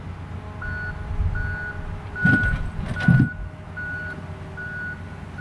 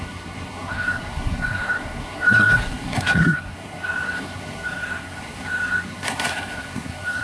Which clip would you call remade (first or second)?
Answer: second